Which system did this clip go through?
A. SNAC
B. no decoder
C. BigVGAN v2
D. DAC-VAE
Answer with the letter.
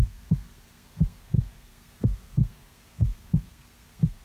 A